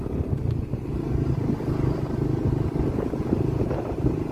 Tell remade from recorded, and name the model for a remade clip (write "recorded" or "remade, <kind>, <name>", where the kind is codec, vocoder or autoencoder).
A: recorded